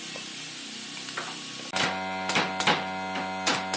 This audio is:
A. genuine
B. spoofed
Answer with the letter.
A